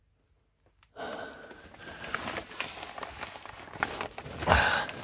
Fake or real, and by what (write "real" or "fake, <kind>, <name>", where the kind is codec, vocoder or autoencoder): real